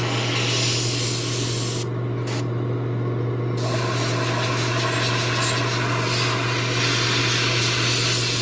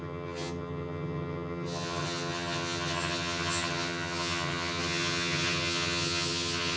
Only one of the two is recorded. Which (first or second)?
first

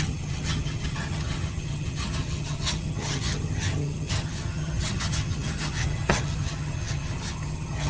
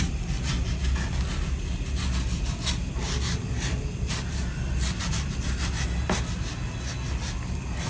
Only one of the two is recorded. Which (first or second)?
second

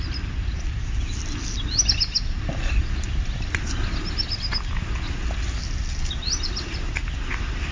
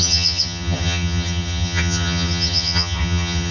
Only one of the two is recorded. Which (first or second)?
first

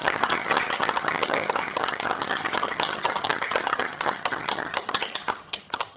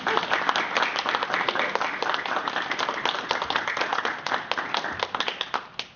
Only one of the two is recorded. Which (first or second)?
second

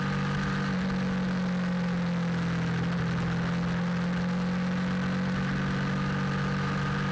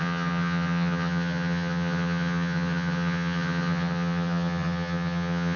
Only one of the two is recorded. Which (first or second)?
first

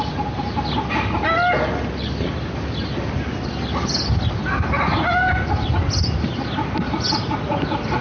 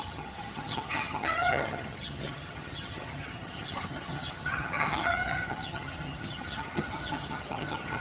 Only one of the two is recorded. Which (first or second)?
first